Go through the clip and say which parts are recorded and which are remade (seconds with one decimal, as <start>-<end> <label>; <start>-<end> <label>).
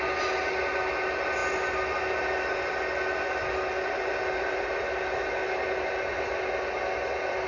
0.0-7.5 recorded